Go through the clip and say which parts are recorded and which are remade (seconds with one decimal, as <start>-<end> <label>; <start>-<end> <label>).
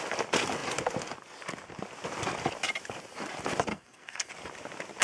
0.0-3.7 recorded; 3.7-4.3 remade; 4.3-5.0 recorded